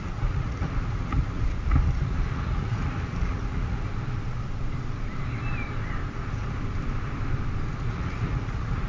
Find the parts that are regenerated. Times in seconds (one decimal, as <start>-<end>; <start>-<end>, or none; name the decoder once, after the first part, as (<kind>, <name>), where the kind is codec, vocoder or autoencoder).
0.0-3.9 (vocoder, Vocos); 7.9-8.9